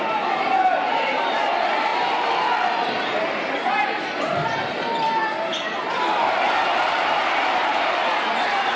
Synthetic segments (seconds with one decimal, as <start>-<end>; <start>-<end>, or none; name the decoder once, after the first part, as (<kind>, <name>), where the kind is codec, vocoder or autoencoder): 0.0-1.9 (vocoder, BigVGAN v2); 6.9-8.0